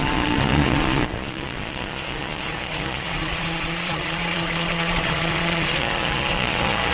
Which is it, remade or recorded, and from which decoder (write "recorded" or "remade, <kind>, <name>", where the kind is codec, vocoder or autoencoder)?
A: remade, vocoder, Vocos